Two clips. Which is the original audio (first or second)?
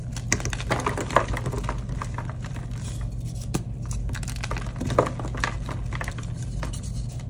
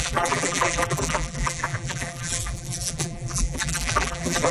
first